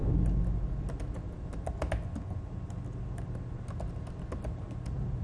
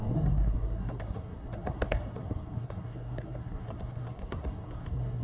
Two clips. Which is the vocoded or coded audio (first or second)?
second